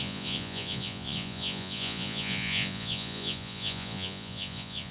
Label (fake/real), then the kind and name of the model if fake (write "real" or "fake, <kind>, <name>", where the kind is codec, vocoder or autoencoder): fake, vocoder, Vocos